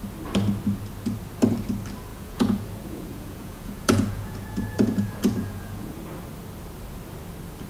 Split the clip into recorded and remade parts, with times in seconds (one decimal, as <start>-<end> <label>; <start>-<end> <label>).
0.0-2.1 recorded; 2.1-5.9 remade; 5.9-7.7 recorded

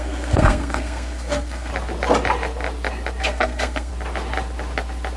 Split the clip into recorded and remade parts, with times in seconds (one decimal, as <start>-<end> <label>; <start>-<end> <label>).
0.0-1.7 remade; 1.7-3.2 recorded; 3.2-3.9 remade; 3.9-5.2 recorded

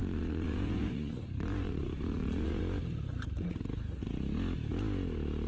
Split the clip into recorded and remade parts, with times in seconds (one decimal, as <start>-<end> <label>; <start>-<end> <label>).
0.0-2.6 remade; 2.6-5.5 recorded

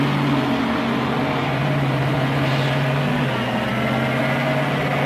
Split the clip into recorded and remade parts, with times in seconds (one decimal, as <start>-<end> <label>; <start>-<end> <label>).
0.0-1.4 recorded; 1.4-3.1 remade; 3.1-5.1 recorded